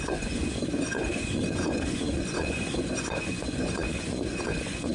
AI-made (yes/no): yes